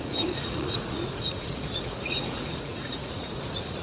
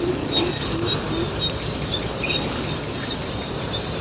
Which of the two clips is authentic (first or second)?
second